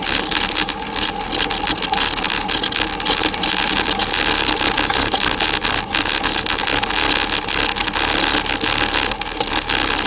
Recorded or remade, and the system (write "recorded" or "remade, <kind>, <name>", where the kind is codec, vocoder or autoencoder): recorded